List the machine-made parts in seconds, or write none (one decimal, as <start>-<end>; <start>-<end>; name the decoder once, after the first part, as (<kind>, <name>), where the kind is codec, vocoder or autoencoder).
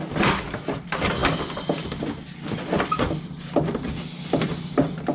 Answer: none